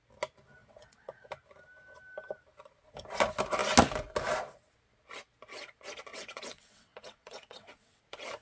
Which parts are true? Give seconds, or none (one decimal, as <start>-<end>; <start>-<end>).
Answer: 0.0-0.6; 1.3-6.1; 8.0-8.4